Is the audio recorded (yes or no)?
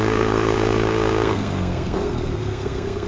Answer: no